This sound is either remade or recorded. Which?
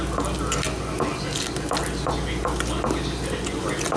recorded